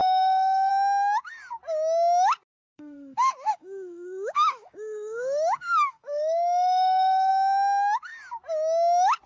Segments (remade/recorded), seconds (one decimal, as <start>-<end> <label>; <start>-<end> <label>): 0.0-0.7 remade; 0.7-2.7 recorded; 2.7-7.3 remade; 7.3-9.3 recorded